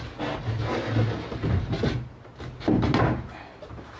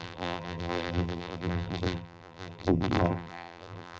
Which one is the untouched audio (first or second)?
first